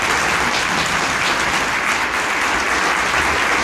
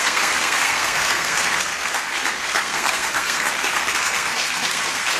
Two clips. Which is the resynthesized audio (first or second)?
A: second